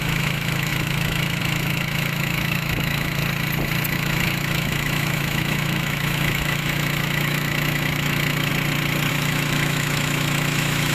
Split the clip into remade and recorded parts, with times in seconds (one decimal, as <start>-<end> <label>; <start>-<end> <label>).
0.0-3.2 remade; 3.2-3.9 recorded; 3.9-8.5 remade; 8.5-9.1 recorded; 9.1-10.9 remade